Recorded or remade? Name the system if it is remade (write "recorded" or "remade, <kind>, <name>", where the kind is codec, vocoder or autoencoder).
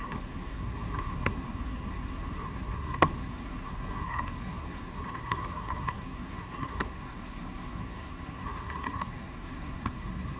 remade, codec, SNAC